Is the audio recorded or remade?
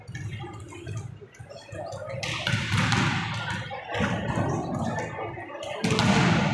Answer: recorded